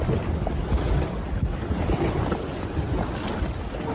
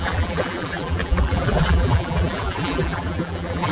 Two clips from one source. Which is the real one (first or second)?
first